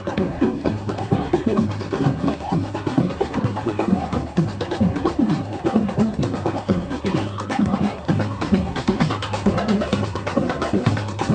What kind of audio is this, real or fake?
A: fake